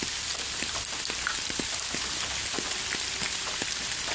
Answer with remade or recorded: recorded